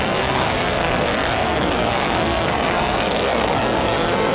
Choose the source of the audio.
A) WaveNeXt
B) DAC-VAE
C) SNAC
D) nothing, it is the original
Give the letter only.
C